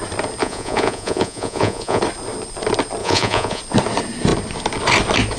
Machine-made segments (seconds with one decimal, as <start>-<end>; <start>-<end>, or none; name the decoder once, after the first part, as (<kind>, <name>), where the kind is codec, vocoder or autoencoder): 0.4-2.0 (vocoder, Vocos); 3.0-3.6